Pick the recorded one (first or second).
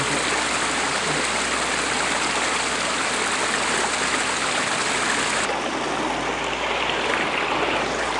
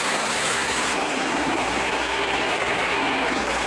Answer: first